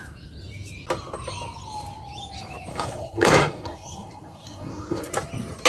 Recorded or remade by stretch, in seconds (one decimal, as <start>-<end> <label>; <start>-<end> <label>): 0.0-2.7 recorded; 2.7-5.1 remade; 5.1-5.7 recorded

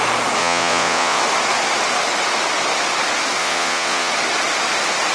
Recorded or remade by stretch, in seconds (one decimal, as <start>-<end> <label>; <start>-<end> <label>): 0.0-0.4 recorded; 0.4-1.2 remade; 1.2-3.4 recorded; 3.4-4.1 remade; 4.1-5.1 recorded

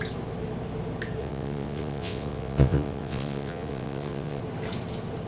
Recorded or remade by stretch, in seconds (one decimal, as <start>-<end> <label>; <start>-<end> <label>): 0.0-1.2 recorded; 1.2-4.4 remade; 4.4-5.3 recorded